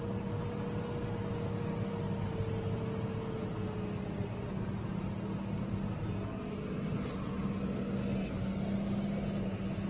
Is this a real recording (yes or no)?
yes